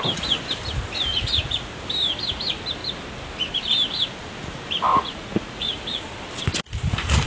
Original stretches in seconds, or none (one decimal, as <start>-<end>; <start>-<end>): 0.0-1.1; 1.7-4.9; 6.0-7.3